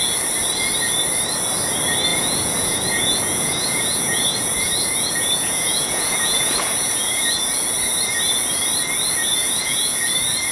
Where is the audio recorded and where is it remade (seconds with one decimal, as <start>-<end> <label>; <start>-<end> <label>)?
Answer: 0.0-2.1 recorded; 2.1-7.4 remade; 7.4-9.4 recorded; 9.4-10.0 remade; 10.0-10.5 recorded